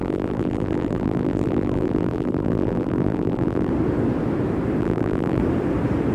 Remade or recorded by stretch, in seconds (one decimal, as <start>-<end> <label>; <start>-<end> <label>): 0.0-3.7 remade; 3.7-4.8 recorded; 4.8-5.4 remade; 5.4-6.1 recorded